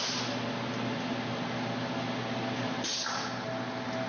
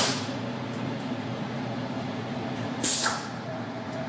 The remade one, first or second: second